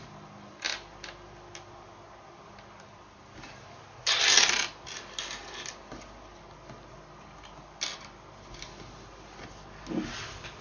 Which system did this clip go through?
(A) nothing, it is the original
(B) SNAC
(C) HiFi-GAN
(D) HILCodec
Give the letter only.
A